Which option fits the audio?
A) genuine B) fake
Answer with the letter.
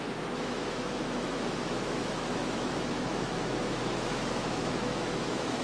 B